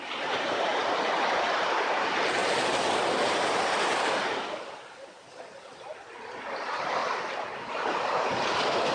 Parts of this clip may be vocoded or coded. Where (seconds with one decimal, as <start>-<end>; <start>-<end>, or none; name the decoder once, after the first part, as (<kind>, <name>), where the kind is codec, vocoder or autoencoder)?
0.0-0.7 (vocoder, BigVGAN v2); 1.5-2.4; 6.5-7.0; 7.6-8.9